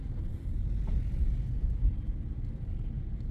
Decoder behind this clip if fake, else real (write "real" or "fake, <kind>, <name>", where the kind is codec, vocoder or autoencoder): real